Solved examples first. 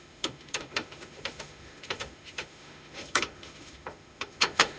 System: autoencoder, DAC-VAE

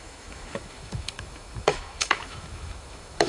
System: autoencoder, DAC-VAE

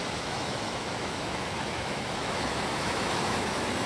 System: autoencoder, DAC-VAE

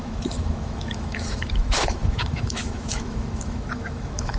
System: autoencoder, DAC-VAE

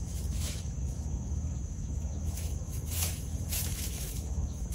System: autoencoder, DAC-VAE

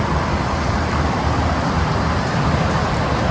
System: none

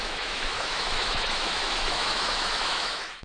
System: autoencoder, DAC-VAE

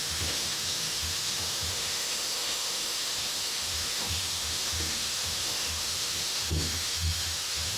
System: autoencoder, DAC-VAE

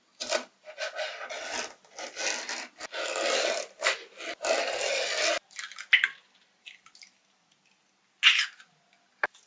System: none